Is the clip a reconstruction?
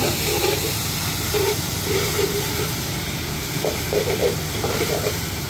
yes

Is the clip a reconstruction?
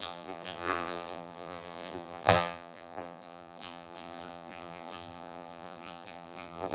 yes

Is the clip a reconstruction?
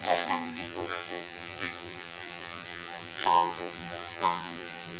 yes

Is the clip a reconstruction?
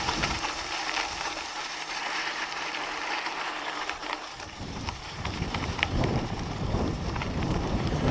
yes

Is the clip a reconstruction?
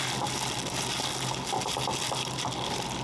yes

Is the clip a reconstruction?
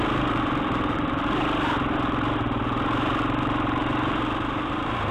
yes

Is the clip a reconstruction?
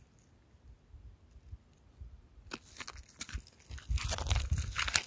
no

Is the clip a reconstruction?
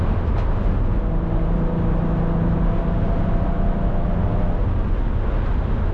no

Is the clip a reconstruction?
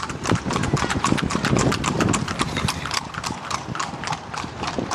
yes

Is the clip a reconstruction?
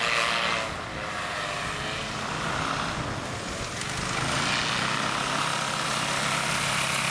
no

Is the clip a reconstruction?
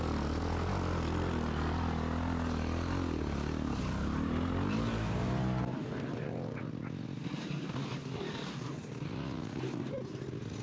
no